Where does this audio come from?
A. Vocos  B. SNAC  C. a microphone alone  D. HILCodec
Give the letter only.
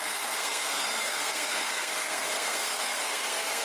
B